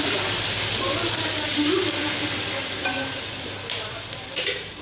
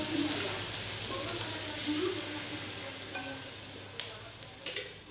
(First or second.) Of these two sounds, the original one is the second